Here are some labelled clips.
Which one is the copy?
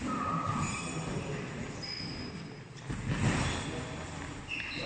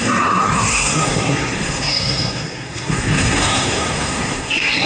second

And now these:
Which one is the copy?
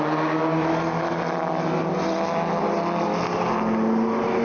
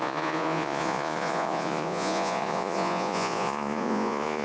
second